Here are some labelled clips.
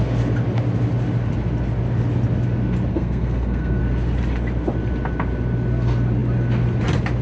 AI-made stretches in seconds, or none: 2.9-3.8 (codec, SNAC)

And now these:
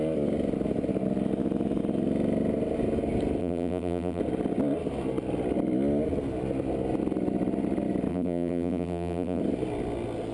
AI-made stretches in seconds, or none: 3.4-4.2 (vocoder, BigVGAN v2); 8.1-9.4

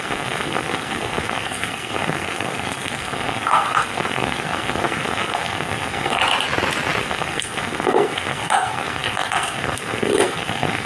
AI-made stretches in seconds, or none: 0.0-6.2 (codec, SNAC); 7.0-10.9

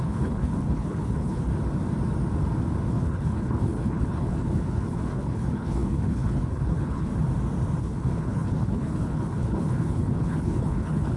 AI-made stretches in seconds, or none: 0.0-1.5 (codec, HILCodec); 2.9-7.1; 7.8-11.2

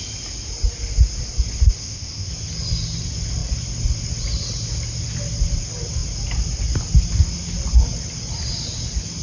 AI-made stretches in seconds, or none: 1.8-2.3 (codec, ZipCodec)

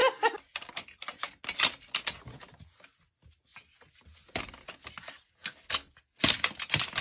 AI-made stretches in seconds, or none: none

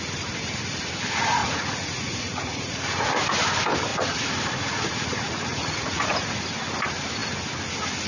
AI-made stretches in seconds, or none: 1.4-3.2 (vocoder, Vocos); 3.9-6.3

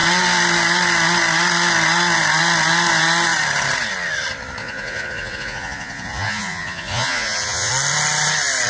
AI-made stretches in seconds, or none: 4.6-7.7 (vocoder, Vocos)